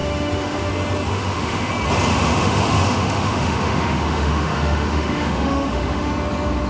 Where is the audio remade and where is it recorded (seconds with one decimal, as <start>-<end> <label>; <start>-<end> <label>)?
0.0-0.7 remade; 0.7-1.1 recorded; 1.1-1.7 remade; 1.7-2.1 recorded; 2.1-6.1 remade; 6.1-6.7 recorded